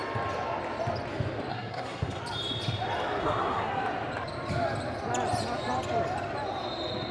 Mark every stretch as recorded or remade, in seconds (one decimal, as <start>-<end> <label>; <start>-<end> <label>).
0.0-1.5 recorded; 1.5-2.2 remade; 2.2-3.2 recorded; 3.2-3.7 remade; 3.7-7.1 recorded